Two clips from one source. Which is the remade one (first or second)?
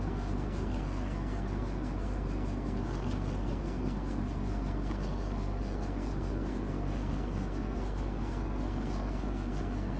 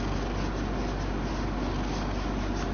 first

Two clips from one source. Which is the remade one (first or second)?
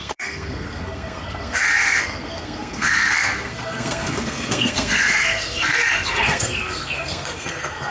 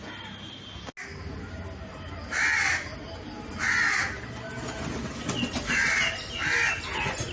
first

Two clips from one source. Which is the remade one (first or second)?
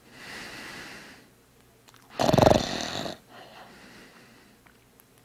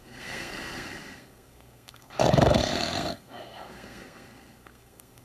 second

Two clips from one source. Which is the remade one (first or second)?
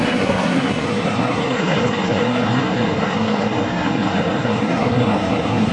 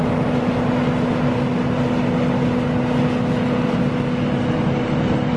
first